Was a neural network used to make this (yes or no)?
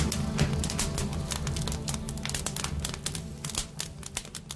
no